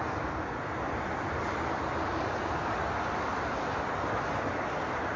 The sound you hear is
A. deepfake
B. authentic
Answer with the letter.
B